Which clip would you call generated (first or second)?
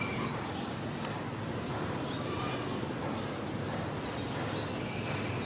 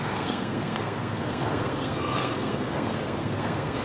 second